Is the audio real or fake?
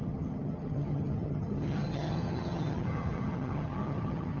fake